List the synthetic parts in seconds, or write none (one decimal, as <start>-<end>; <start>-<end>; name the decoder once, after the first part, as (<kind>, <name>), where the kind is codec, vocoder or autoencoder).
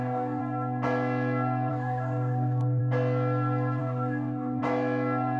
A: 0.0-0.4 (codec, DAC); 1.7-2.8; 3.8-4.6